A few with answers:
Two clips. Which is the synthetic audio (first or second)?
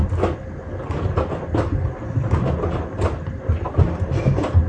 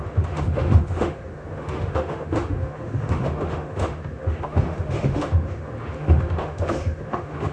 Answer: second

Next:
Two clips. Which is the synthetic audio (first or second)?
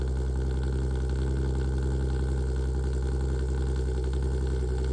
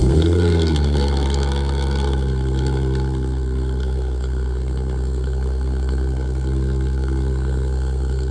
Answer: second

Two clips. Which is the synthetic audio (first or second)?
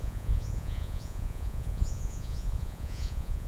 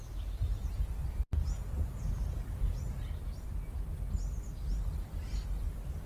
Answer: first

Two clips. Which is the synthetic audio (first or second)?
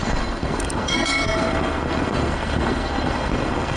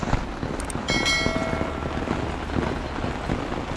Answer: first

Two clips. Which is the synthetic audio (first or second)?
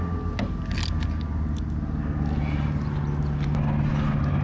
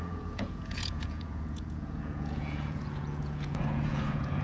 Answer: second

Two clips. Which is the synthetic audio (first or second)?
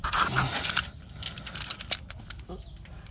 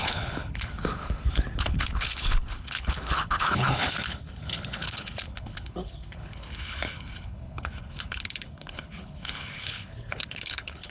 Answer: second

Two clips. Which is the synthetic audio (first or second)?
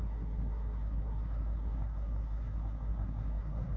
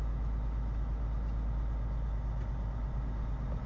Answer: first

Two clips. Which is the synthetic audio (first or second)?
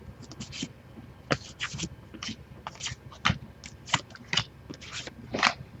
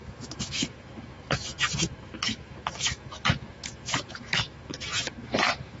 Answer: second